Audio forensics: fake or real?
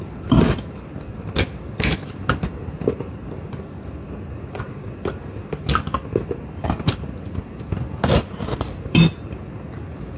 real